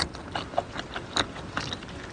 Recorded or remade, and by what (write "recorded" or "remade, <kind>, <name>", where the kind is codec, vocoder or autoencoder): recorded